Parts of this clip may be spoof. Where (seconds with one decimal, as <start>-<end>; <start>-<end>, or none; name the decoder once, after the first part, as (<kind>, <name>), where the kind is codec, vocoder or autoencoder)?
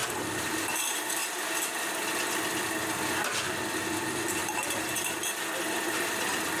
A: none